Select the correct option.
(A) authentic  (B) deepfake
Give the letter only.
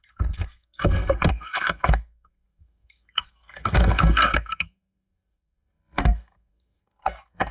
B